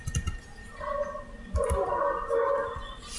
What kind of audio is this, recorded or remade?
recorded